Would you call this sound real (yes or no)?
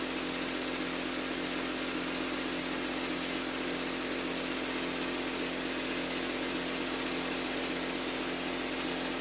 yes